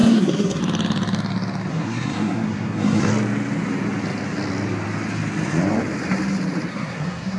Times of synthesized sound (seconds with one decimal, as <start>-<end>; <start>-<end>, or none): 0.0-0.6; 1.7-3.1; 6.7-7.4